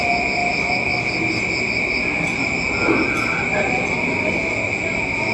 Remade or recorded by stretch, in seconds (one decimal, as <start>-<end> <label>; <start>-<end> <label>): 0.0-5.3 recorded